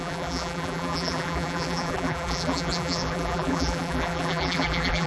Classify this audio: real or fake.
fake